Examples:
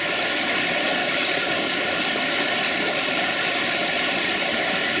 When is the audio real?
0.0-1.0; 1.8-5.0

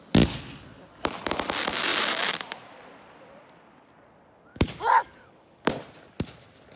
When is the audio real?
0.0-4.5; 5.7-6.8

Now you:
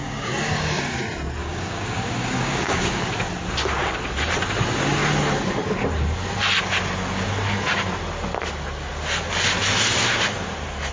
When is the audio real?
1.0-1.4; 3.0-10.9

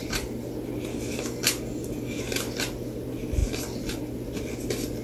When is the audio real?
0.0-0.9; 2.2-5.0

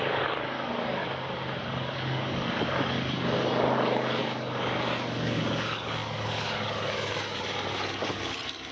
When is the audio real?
1.0-1.6

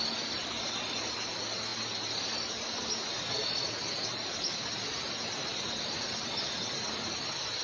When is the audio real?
0.0-7.6

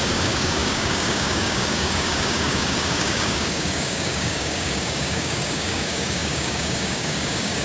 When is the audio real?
none